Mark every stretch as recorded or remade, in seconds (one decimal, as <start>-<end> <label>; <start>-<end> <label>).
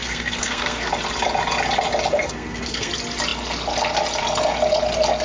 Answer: 0.0-0.9 remade; 0.9-2.2 recorded; 2.2-2.9 remade; 2.9-5.2 recorded